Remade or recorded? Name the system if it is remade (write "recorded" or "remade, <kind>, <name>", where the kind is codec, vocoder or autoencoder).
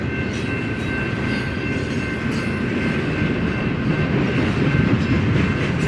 recorded